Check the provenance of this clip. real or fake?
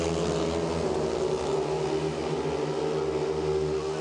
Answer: real